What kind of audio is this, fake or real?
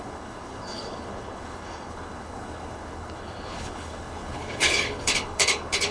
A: fake